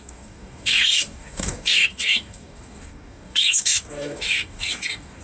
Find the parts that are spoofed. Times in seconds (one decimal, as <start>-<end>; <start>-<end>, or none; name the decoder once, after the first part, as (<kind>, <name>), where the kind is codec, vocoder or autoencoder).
0.0-5.2 (codec, DAC)